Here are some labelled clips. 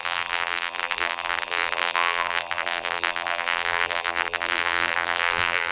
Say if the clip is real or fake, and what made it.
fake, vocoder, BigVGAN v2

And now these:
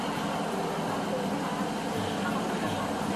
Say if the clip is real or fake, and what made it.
real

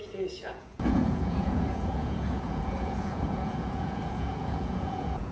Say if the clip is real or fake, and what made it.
fake, vocoder, Vocos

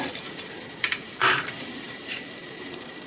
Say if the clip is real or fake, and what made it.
fake, vocoder, BigVGAN v2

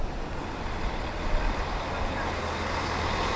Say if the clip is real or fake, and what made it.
real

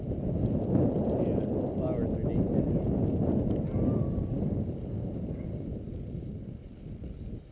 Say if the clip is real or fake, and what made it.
real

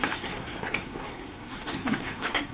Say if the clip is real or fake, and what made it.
fake, codec, SNAC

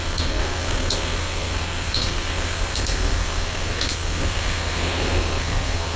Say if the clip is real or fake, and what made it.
fake, codec, SNAC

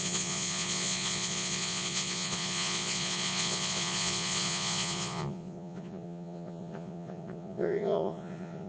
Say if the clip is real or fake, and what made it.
fake, vocoder, Vocos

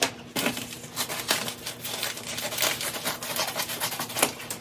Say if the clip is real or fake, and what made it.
real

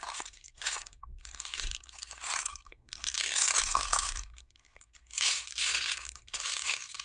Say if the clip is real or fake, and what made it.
fake, codec, SNAC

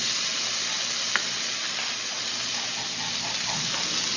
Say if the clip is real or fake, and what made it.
real